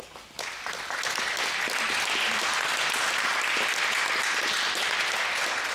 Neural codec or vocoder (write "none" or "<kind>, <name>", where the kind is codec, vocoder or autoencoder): none